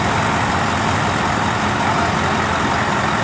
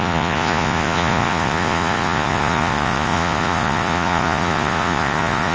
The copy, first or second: second